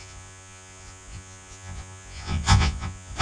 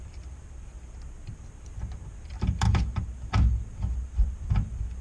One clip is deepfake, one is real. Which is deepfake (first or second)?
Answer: first